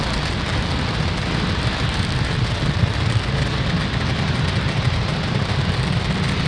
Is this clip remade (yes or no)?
no